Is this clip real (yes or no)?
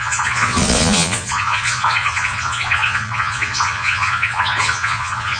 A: no